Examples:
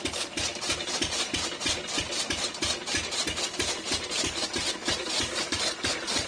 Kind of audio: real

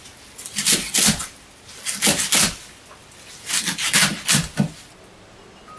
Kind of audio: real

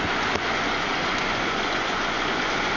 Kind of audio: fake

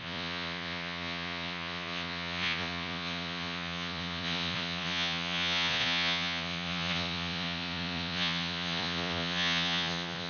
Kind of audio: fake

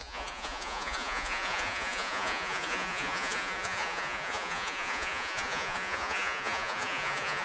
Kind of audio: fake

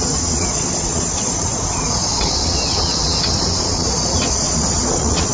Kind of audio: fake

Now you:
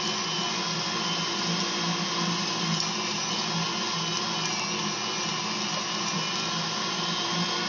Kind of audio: real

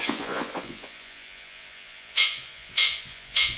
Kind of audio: fake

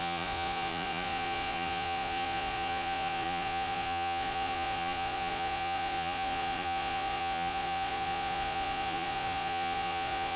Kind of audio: fake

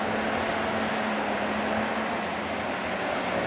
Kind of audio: real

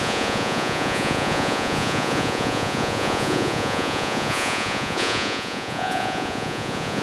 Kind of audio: fake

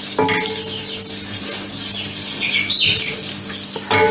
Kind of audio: real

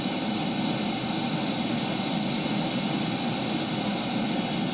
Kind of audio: real